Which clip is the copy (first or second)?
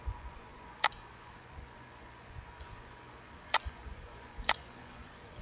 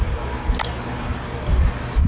first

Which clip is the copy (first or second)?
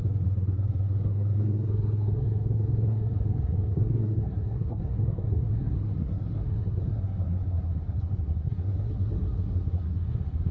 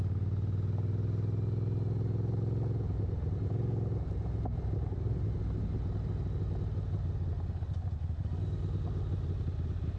first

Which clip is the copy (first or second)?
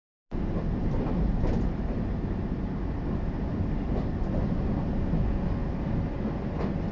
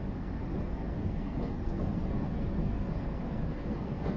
second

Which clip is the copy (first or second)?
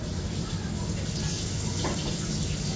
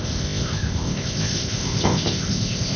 second